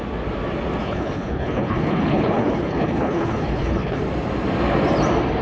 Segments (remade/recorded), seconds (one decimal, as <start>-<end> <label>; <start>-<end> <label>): 0.0-0.8 recorded; 0.8-4.0 remade; 4.0-5.4 recorded